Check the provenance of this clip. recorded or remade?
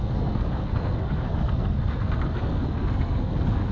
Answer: remade